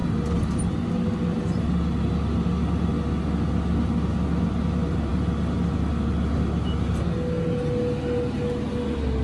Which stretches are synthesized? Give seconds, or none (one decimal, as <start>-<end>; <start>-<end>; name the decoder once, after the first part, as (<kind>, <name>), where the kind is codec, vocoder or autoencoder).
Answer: none